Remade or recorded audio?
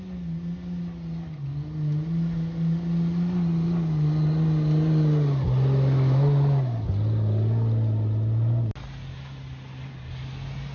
recorded